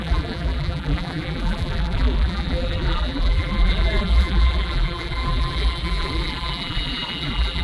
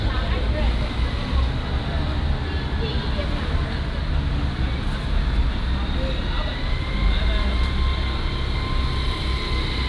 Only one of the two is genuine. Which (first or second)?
second